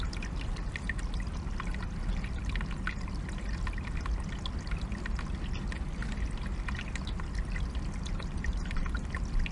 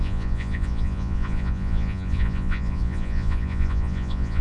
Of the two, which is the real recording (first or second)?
first